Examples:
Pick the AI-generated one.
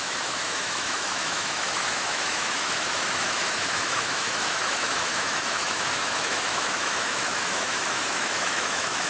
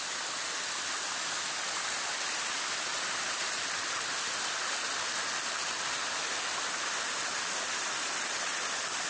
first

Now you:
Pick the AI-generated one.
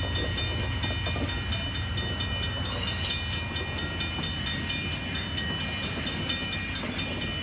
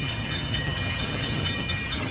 second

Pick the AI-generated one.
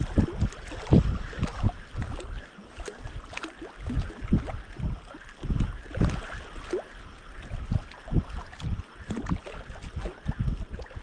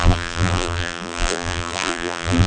second